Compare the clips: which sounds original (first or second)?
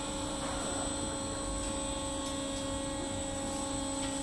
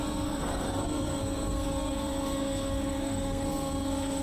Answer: first